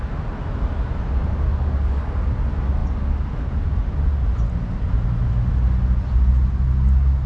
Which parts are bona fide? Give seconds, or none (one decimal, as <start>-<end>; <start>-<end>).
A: 0.0-1.5; 2.1-7.3